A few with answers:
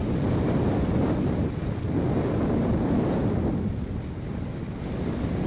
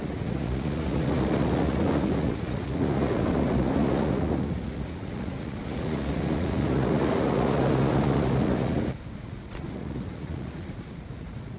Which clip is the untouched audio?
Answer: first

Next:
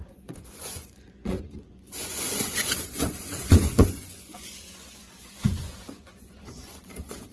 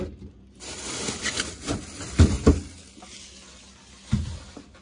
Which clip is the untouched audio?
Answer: second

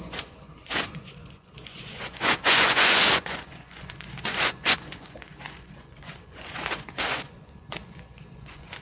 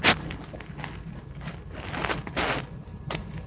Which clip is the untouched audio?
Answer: second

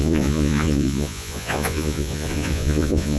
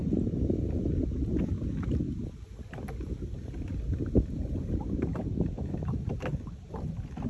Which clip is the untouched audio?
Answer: second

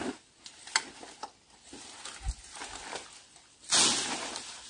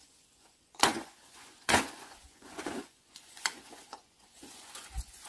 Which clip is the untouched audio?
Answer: first